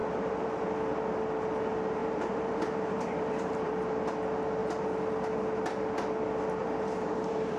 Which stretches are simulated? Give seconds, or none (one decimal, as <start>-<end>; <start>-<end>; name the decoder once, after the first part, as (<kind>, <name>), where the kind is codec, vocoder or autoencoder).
0.0-0.6 (vocoder, BigVGAN v2); 2.0-3.7; 6.6-7.6